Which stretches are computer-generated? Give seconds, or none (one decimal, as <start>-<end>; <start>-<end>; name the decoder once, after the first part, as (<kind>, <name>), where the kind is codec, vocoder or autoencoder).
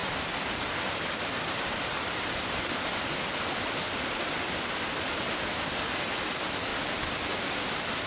0.0-8.1 (vocoder, BigVGAN v2)